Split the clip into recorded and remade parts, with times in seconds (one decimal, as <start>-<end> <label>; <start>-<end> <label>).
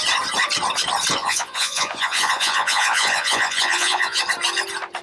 0.0-1.2 recorded; 1.2-4.2 remade; 4.2-5.0 recorded